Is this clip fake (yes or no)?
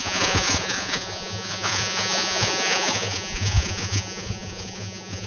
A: yes